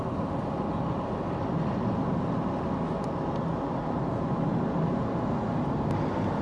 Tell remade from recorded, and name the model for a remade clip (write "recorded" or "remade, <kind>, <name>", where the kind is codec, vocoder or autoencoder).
recorded